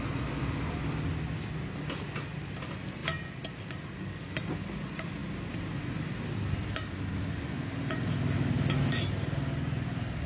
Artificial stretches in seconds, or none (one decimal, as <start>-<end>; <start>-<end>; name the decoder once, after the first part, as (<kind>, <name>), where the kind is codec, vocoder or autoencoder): none